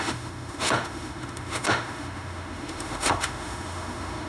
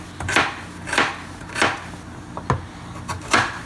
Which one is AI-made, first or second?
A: first